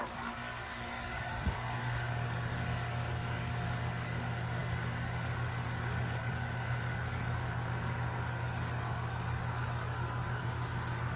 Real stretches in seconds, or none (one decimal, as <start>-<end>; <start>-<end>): 10.4-11.2